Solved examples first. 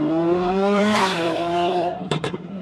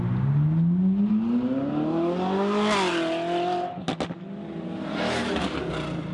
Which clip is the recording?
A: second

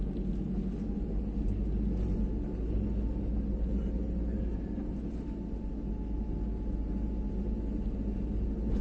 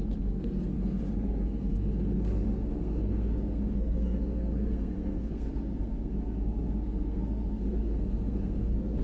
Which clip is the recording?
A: first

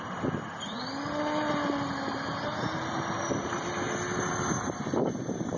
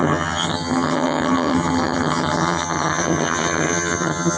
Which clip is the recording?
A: first